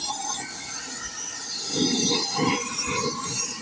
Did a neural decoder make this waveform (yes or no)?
no